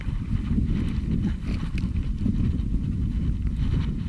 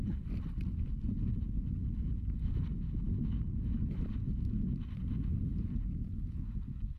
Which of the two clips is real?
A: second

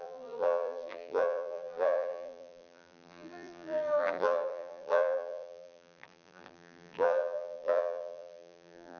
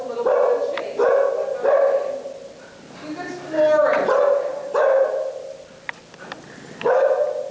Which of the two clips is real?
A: second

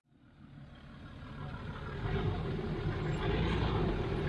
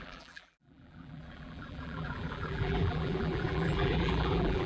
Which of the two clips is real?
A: first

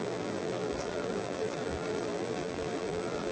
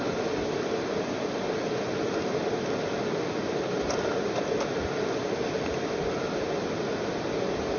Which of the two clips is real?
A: second